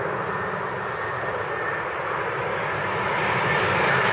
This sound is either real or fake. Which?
real